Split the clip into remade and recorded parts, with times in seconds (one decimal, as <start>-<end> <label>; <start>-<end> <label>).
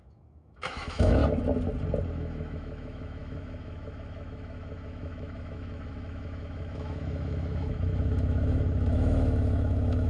0.0-1.2 remade; 1.2-2.1 recorded; 2.1-10.1 remade